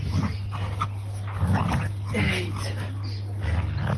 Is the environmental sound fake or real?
real